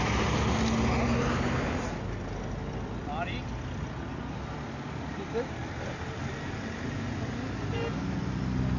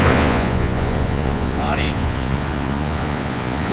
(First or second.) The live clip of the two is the first